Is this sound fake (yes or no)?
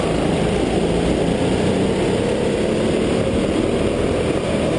no